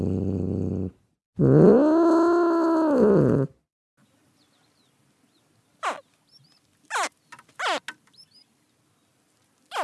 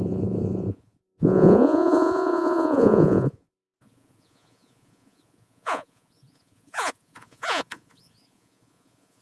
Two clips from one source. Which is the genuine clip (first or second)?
first